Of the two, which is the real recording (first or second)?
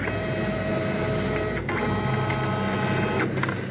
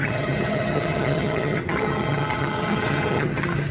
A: first